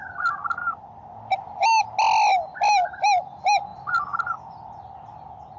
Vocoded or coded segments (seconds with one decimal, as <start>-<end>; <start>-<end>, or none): none